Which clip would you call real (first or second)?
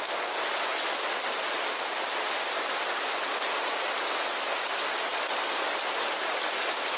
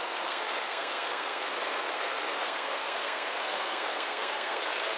first